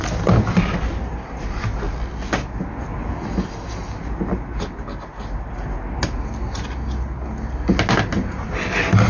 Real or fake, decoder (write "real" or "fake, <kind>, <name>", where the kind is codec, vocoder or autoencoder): real